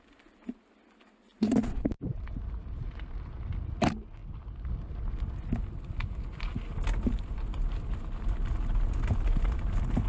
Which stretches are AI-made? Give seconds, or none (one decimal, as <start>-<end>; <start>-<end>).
none